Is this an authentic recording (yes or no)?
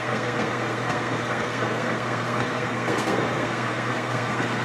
no